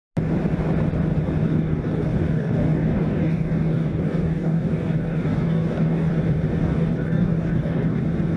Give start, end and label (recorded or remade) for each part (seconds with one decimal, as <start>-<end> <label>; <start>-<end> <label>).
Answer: 0.0-1.4 recorded; 1.4-6.1 remade; 6.1-6.6 recorded; 6.6-8.0 remade; 8.0-8.4 recorded